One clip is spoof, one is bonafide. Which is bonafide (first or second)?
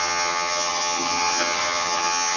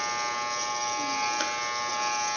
second